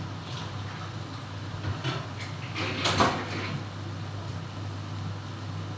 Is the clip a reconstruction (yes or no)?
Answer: no